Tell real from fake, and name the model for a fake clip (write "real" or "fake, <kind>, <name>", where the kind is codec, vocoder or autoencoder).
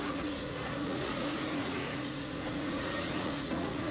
fake, vocoder, Vocos